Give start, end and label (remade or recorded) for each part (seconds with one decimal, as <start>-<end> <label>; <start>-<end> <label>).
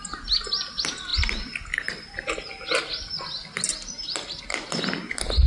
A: 0.0-5.5 recorded